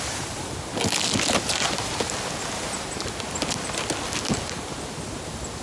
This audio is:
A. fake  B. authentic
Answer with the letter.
B